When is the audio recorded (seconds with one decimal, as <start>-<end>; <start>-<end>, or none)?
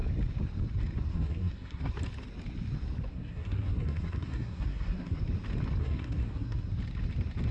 0.0-1.1; 1.9-3.1; 5.2-5.8; 6.7-7.5